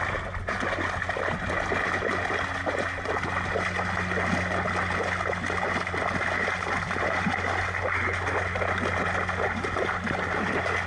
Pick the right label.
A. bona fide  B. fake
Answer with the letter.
A